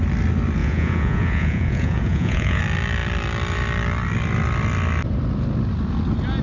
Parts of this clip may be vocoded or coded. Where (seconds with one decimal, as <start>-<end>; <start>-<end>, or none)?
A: 0.6-2.6